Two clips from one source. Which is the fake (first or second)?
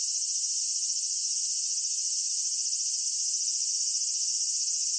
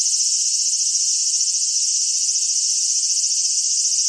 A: first